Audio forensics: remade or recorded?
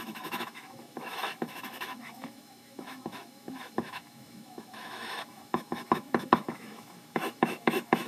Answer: remade